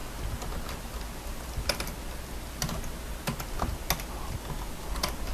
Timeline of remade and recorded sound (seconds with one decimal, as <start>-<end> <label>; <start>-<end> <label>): 0.0-5.3 recorded